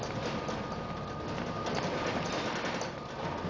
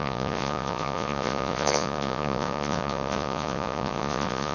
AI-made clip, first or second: second